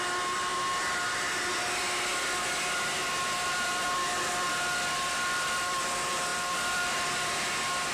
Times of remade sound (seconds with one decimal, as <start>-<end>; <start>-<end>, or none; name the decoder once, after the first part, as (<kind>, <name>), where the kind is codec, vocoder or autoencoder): 0.5-1.0 (vocoder, BigVGAN v2); 6.3-7.5